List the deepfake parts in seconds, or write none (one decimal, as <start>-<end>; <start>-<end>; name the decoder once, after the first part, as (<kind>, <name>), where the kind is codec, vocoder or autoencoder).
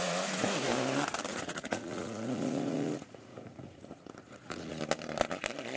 1.3-4.8 (vocoder, Vocos)